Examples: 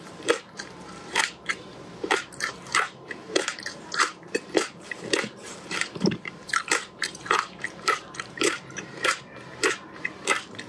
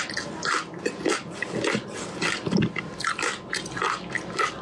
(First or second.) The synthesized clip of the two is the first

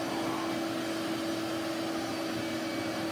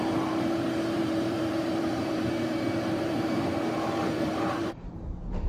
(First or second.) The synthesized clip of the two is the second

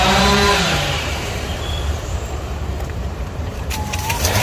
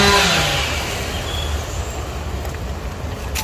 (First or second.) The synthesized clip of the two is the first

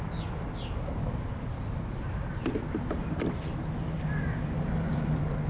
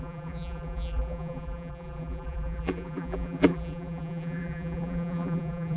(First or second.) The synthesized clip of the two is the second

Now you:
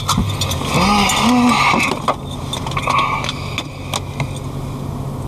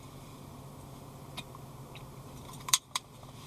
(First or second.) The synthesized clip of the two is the second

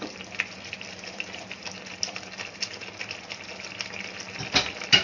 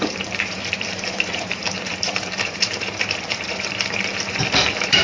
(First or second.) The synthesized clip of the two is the second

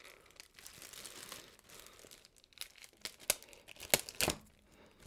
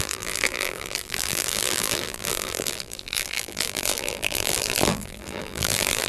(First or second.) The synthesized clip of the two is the second